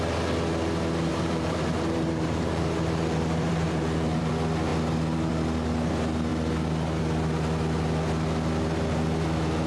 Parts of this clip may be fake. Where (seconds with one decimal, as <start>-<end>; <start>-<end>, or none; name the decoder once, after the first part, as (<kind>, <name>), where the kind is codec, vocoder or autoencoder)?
1.1-4.3 (vocoder, BigVGAN v2)